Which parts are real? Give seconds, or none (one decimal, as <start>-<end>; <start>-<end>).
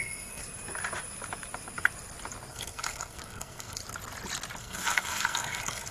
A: 0.4-2.5; 3.8-4.6